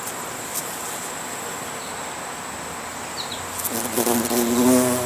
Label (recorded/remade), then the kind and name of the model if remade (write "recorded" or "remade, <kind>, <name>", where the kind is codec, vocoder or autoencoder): recorded